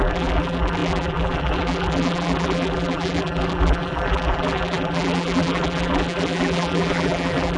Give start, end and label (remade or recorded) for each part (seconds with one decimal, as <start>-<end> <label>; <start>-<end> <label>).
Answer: 0.0-7.6 remade